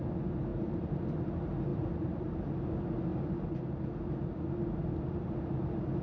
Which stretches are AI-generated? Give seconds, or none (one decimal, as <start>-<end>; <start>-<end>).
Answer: 0.5-1.0; 1.7-2.5